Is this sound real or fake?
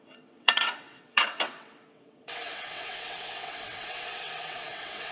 fake